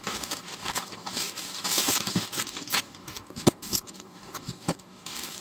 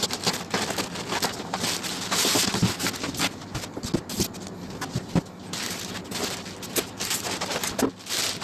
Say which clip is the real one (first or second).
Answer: second